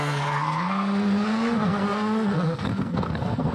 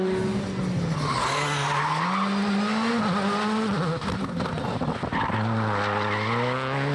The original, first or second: second